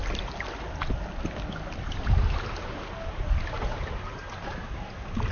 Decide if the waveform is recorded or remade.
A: recorded